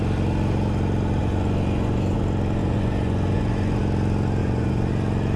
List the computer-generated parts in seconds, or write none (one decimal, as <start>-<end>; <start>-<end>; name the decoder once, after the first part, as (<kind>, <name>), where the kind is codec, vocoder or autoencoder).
1.2-2.2 (vocoder, Vocos); 2.6-3.8; 4.4-4.9